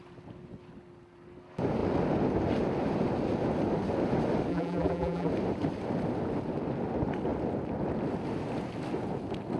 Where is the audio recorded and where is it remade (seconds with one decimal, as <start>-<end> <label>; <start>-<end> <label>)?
0.0-4.5 recorded; 4.5-5.3 remade; 5.3-9.6 recorded